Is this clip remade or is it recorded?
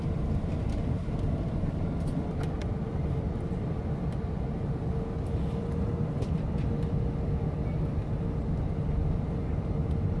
recorded